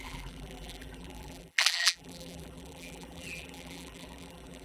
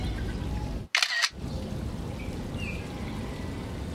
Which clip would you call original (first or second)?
second